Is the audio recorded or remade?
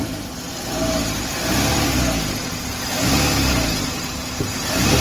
recorded